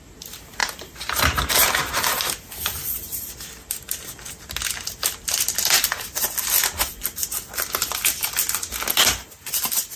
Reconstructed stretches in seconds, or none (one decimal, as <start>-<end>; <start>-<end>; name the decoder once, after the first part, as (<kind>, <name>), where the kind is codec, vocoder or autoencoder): 0.6-1.5 (vocoder, BigVGAN v2)